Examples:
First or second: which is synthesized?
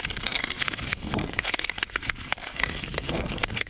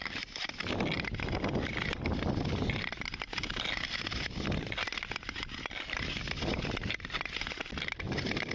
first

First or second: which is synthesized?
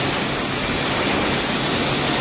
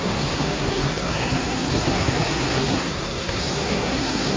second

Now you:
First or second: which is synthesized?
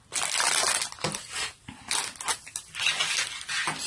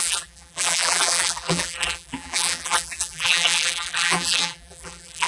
second